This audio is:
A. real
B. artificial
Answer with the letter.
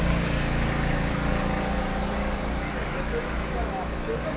B